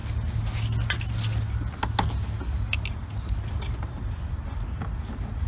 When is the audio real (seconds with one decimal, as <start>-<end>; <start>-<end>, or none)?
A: 0.0-5.5